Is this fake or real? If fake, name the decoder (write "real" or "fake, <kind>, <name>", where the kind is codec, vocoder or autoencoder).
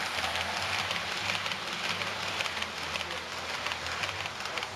real